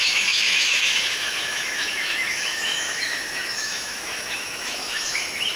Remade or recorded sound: remade